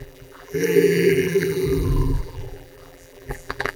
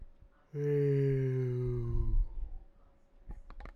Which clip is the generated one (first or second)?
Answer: first